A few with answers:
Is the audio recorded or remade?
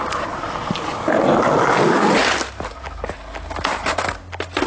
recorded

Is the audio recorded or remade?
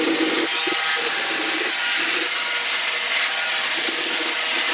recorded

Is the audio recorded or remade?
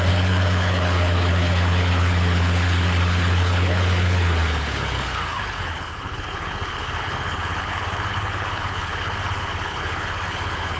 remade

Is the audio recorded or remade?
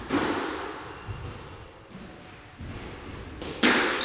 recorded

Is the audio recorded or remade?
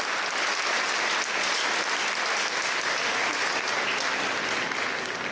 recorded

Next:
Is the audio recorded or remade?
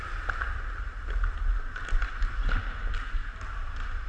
recorded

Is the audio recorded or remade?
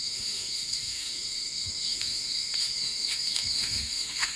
remade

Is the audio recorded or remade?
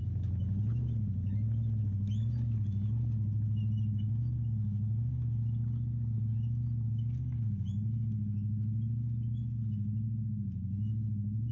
recorded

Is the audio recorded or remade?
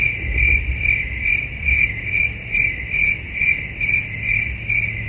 recorded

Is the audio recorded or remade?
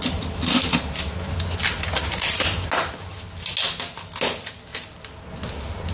recorded